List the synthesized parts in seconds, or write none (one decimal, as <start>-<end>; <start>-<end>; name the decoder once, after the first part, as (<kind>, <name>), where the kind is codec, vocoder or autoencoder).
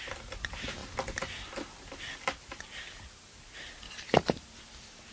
none